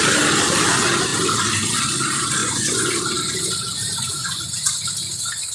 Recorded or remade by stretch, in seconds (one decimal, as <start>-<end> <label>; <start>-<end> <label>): 0.0-2.4 recorded; 2.4-2.9 remade; 2.9-4.2 recorded; 4.2-4.7 remade; 4.7-5.5 recorded

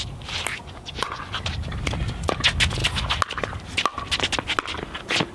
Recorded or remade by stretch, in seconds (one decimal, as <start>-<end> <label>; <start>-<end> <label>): 0.0-0.5 recorded; 0.5-1.2 remade; 1.2-5.3 recorded

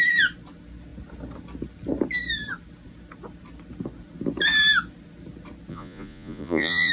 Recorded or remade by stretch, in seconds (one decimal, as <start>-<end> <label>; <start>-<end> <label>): 0.0-5.7 recorded; 5.7-6.9 remade

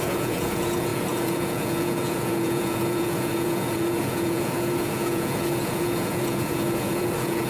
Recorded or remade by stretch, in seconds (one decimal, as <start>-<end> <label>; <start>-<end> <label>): 0.0-7.5 remade